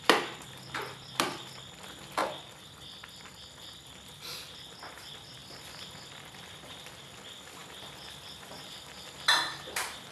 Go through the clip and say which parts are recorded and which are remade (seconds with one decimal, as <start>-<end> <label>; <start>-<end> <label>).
0.0-2.2 recorded; 2.2-4.6 remade; 4.6-7.6 recorded; 7.6-9.3 remade; 9.3-10.1 recorded